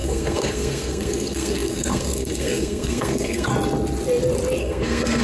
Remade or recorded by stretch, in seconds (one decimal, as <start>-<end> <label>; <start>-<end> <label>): 0.0-3.5 remade; 3.5-4.6 recorded; 4.6-5.2 remade